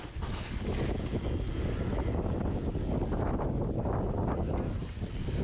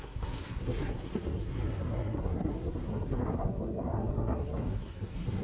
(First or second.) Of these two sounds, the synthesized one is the second